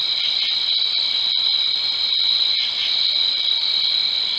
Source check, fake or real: real